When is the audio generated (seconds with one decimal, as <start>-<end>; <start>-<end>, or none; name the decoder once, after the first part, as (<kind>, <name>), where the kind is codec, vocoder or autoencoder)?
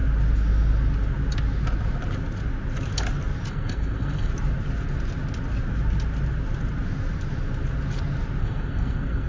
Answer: 3.5-4.3 (codec, SNAC); 8.4-9.3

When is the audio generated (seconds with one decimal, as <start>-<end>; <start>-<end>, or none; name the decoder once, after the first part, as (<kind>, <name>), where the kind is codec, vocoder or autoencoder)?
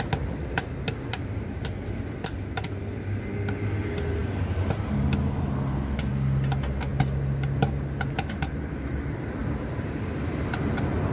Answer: none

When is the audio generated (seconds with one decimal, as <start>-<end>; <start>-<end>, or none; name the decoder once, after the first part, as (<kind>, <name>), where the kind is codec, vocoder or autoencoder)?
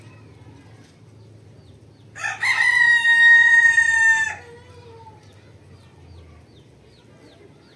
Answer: none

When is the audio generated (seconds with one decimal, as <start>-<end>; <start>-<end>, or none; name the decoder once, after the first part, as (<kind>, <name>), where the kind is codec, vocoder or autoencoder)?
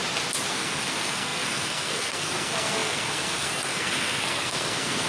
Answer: 0.5-5.1 (codec, SNAC)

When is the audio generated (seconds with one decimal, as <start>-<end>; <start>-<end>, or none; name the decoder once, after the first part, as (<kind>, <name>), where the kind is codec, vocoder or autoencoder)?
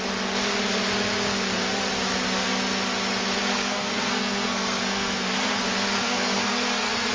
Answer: 3.4-5.6 (codec, SNAC); 6.0-7.1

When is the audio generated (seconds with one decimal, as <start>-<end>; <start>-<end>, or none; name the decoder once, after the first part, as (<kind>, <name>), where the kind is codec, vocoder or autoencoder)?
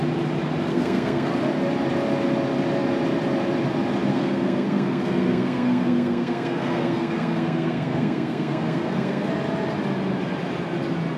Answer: 0.7-1.3 (codec, SNAC); 4.1-9.3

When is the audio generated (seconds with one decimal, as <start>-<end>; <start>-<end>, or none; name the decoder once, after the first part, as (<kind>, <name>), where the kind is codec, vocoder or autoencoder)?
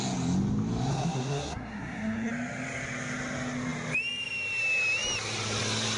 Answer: 0.9-2.3 (codec, SNAC)